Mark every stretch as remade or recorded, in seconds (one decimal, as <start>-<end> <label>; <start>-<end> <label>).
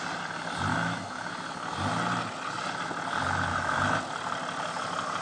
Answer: 0.0-0.7 recorded; 0.7-1.3 remade; 1.3-3.5 recorded; 3.5-4.0 remade; 4.0-5.2 recorded